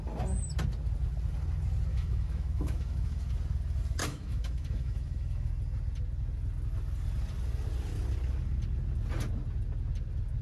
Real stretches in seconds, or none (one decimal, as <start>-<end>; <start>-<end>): 0.0-1.9; 3.3-4.0; 5.5-10.4